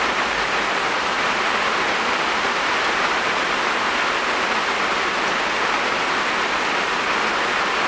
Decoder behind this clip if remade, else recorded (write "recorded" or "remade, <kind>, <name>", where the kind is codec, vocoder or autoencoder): recorded